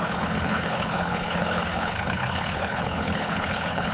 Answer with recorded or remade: remade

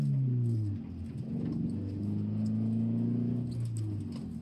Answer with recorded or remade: recorded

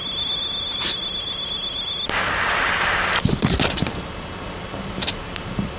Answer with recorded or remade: recorded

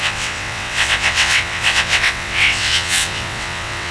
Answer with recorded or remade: remade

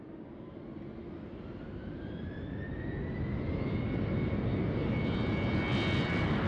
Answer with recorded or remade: recorded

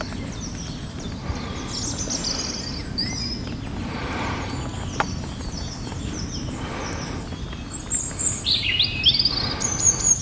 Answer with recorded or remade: recorded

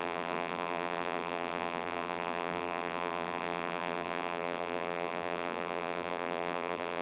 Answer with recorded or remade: remade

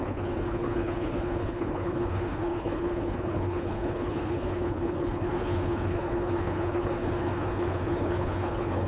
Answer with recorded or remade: remade